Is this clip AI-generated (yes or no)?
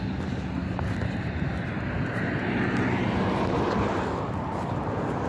no